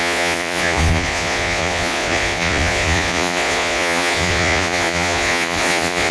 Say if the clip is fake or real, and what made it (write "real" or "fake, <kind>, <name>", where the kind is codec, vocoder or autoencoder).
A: fake, vocoder, Vocos